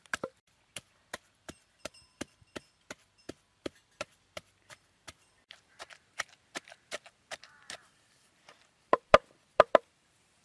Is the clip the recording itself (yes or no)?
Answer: no